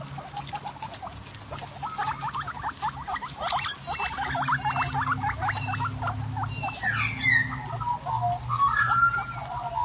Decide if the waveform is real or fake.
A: real